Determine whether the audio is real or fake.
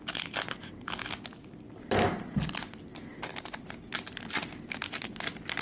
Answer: real